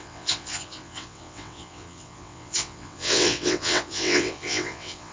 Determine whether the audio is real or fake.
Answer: fake